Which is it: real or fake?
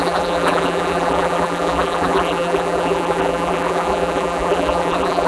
fake